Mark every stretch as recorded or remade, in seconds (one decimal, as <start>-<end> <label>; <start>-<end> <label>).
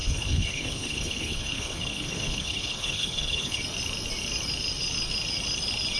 0.0-3.6 remade; 3.6-6.0 recorded